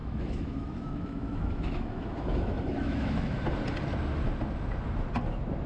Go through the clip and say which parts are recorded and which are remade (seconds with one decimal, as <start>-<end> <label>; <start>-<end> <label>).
0.0-3.4 remade; 3.4-5.7 recorded

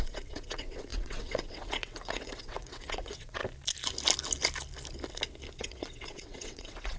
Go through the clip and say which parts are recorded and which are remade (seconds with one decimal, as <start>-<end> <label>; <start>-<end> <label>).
0.0-3.4 remade; 3.4-5.6 recorded; 5.6-7.0 remade